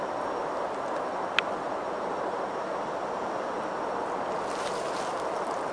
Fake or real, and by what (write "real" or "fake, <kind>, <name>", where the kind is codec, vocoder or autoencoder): real